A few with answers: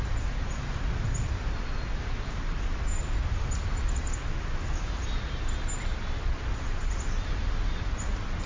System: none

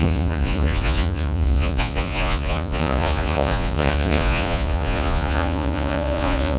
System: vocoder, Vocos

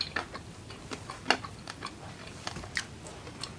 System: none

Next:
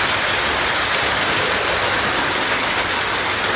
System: none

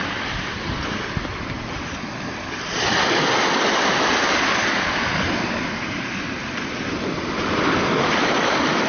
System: none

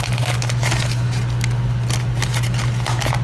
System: none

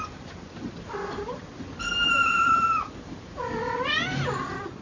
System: none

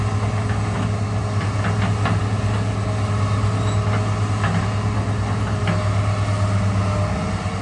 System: none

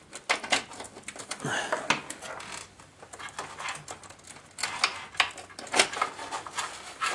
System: none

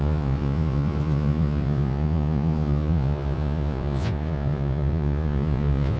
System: vocoder, Vocos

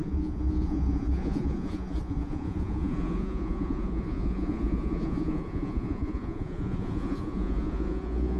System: vocoder, Vocos